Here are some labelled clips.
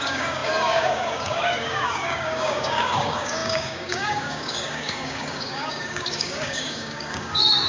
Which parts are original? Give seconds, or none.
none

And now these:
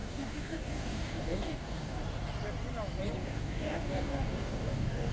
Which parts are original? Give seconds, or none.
2.0-3.2

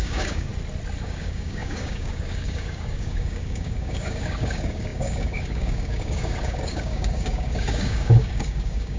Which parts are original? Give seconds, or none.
0.5-1.0

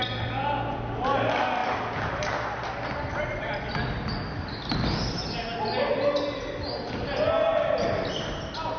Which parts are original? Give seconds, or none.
0.0-8.8